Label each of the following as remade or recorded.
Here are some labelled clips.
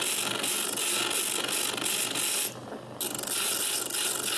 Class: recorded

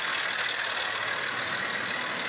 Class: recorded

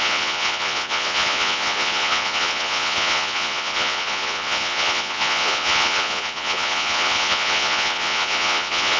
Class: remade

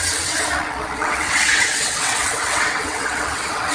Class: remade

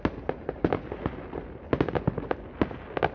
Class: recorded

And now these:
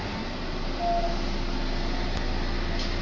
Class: recorded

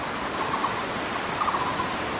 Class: recorded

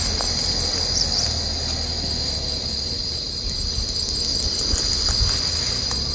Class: recorded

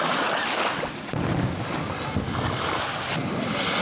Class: recorded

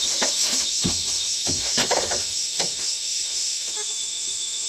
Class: remade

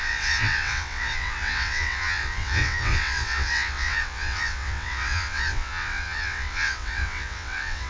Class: remade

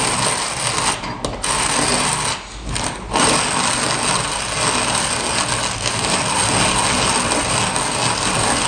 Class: recorded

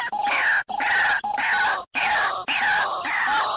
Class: recorded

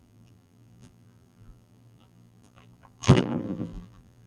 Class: remade